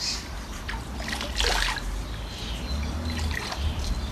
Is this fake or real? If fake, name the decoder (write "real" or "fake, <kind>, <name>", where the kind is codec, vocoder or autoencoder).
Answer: real